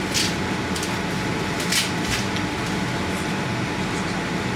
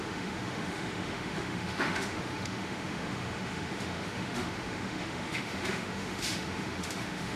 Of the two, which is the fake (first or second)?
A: second